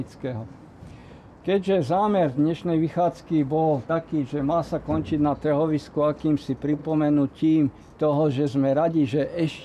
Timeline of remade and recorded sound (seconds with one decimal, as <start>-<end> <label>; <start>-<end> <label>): 0.0-9.6 recorded